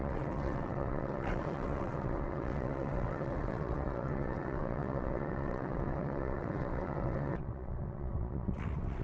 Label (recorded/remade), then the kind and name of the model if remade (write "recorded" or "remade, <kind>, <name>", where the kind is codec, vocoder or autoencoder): remade, vocoder, WaveNeXt